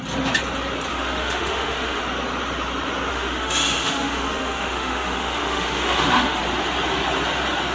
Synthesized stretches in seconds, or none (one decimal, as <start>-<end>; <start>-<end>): 0.9-2.0; 3.1-6.4